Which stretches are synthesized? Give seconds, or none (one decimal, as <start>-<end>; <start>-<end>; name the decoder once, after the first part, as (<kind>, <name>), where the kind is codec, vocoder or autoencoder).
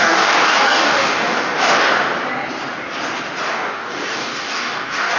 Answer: 0.0-1.9 (codec, DAC); 3.5-5.2